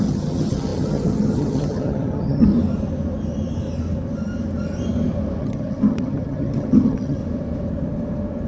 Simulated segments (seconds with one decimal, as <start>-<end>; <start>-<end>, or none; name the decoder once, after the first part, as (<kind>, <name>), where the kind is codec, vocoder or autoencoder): 0.0-2.5 (vocoder, HiFi-GAN); 5.4-7.2